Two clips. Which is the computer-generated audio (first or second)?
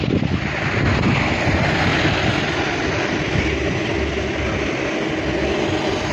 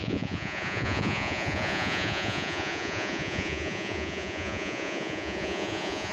second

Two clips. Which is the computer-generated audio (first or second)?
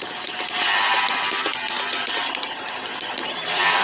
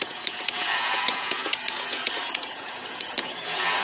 second